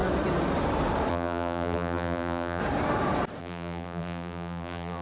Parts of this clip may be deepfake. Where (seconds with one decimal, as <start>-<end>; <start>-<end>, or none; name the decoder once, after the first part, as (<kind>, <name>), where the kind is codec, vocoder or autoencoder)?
1.1-2.6 (vocoder, BigVGAN v2); 3.4-5.0